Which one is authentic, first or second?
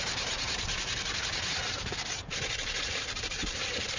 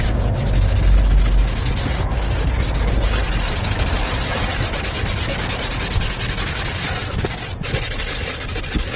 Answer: second